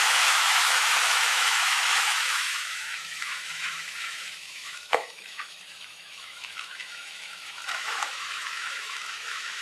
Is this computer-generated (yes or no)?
yes